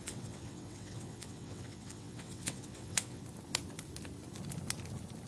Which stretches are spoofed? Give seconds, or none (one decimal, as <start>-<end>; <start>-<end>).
0.0-3.2